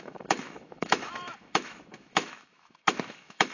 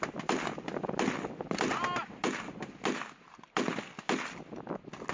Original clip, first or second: second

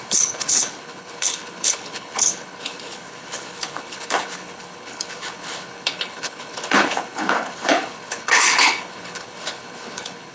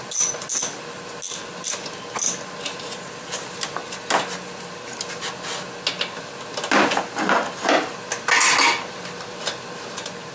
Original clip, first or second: second